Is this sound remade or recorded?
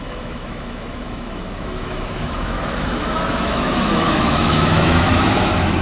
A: remade